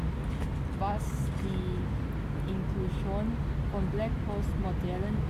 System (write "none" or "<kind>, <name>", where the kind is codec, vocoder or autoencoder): none